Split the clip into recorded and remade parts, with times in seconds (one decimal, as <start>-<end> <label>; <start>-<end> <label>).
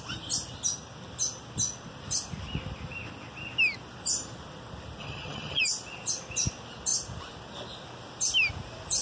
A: 0.0-5.0 recorded; 5.0-5.6 remade; 5.6-9.0 recorded